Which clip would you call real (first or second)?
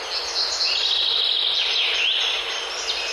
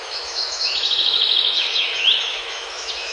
first